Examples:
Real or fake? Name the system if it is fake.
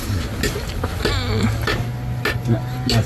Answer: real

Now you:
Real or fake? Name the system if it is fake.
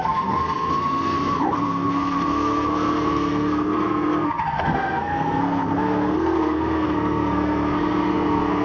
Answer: fake, codec, SNAC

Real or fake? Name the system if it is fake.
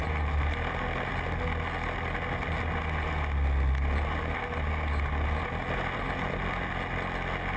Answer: real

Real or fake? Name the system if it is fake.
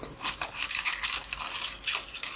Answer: real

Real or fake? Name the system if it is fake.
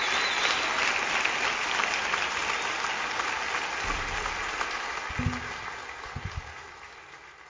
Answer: real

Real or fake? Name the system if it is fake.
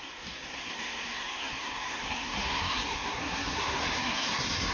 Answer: fake, codec, SNAC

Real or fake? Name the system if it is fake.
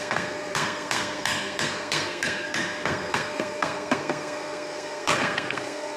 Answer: fake, codec, SNAC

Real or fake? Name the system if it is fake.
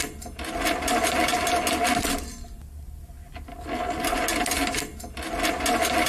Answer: real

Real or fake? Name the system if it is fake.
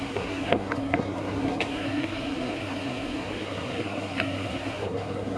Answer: fake, codec, SNAC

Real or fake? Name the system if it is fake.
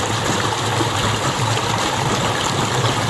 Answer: real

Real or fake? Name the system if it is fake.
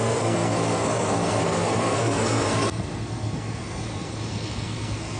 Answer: fake, codec, SNAC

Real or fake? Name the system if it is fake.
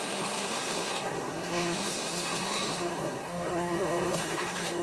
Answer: fake, codec, SNAC